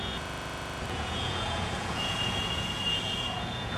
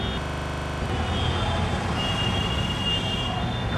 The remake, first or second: first